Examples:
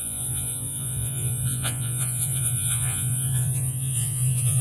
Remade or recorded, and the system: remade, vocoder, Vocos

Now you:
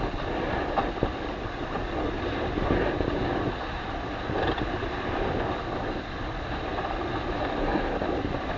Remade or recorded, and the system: recorded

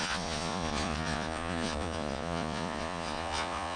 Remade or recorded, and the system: remade, vocoder, Vocos